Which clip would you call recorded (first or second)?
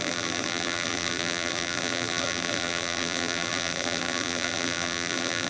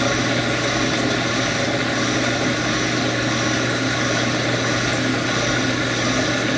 second